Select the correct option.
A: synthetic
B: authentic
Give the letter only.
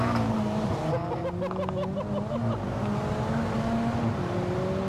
B